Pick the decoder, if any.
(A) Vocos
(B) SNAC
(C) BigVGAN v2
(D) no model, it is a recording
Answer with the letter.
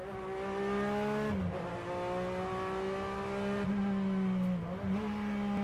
D